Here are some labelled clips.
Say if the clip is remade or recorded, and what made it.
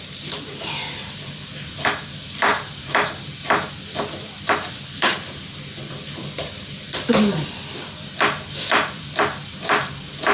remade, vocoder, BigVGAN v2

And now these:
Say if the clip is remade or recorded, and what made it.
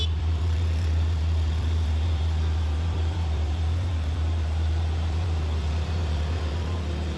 remade, vocoder, BigVGAN v2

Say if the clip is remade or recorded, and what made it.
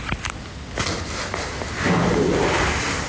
recorded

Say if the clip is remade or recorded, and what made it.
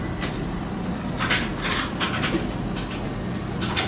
recorded